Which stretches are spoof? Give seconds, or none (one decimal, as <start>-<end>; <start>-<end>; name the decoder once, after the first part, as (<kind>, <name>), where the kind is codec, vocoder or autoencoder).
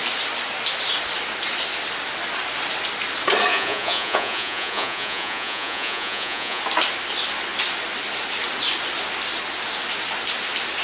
3.5-6.6 (vocoder, Vocos)